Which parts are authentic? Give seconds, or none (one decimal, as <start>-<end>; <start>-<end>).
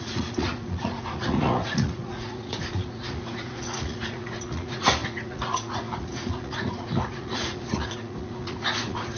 none